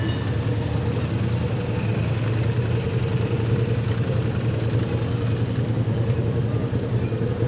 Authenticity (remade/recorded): recorded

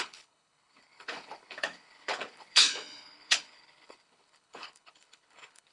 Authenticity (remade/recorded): remade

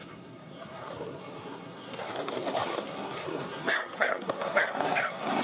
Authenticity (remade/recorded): remade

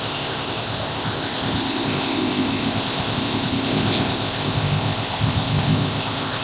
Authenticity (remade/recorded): remade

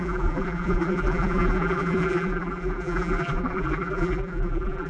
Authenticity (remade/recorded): remade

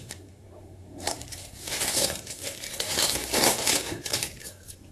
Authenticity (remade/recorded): remade